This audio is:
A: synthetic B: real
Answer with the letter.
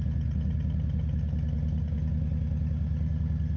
B